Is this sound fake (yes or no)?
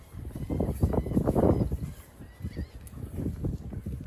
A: yes